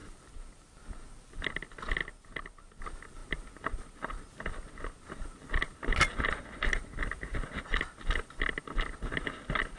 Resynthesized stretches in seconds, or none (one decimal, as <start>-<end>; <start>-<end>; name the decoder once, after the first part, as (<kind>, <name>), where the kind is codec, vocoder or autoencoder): none

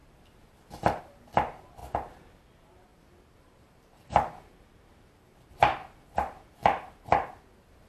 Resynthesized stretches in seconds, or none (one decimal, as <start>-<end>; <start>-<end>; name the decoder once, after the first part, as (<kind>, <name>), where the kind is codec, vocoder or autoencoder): 2.9-7.3 (vocoder, BigVGAN v2)